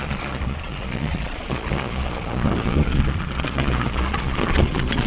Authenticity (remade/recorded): remade